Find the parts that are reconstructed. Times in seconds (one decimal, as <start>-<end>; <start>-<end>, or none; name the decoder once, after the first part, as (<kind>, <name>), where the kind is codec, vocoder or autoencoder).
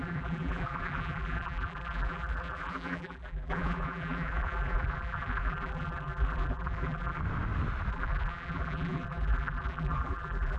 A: 0.0-7.2 (vocoder, BigVGAN v2); 7.9-10.6